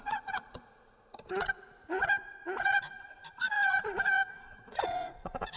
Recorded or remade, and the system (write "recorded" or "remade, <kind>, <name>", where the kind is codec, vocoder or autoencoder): remade, vocoder, Vocos